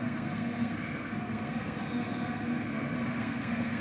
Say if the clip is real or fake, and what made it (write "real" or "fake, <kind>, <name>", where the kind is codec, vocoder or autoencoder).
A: fake, codec, SNAC